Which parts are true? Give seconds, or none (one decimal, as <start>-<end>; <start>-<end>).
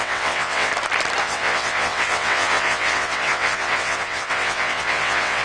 0.7-1.2